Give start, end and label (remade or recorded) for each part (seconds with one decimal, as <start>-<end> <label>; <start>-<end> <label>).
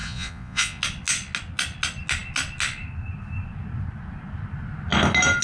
0.0-0.8 remade; 0.8-5.4 recorded